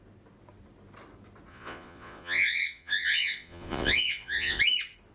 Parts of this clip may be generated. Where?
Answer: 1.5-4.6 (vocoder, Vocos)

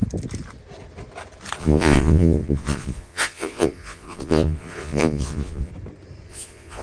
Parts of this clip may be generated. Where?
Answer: 1.6-5.7 (vocoder, Vocos); 6.3-6.8

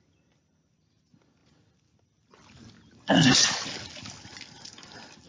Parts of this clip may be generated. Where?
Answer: none